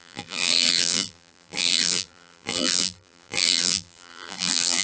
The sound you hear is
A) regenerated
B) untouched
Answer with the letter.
A